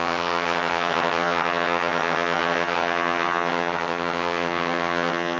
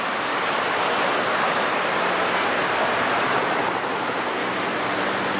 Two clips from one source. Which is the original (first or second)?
second